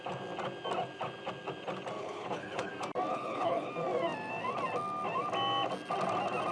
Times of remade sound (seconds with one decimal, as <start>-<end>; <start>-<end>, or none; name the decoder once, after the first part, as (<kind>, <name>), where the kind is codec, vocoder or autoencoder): 2.0-2.7 (codec, HILCodec); 3.1-3.7